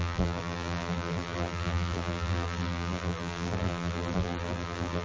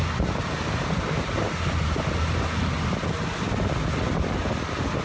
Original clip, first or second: second